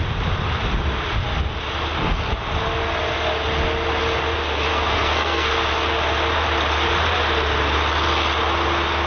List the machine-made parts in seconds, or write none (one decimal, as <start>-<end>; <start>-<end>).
4.7-5.5